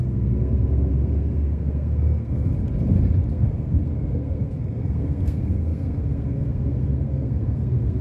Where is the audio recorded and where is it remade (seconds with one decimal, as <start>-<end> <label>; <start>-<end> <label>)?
0.0-2.5 remade; 2.5-3.3 recorded; 3.3-8.0 remade